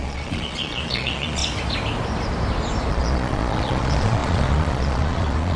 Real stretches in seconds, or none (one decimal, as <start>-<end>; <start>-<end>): 1.4-2.9